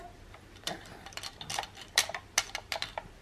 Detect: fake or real real